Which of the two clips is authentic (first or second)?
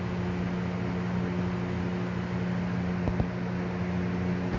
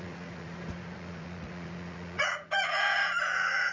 first